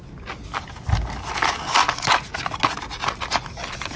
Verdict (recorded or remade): recorded